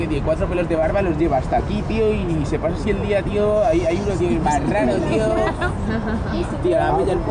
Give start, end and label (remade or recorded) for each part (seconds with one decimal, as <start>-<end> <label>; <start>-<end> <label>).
0.0-7.3 recorded